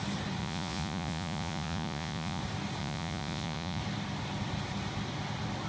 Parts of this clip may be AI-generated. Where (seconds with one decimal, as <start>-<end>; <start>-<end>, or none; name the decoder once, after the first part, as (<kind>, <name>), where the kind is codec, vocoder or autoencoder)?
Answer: 0.4-2.4 (vocoder, Vocos); 2.8-3.8